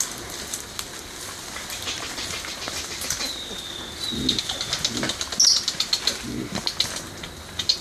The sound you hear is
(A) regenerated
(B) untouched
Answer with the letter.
B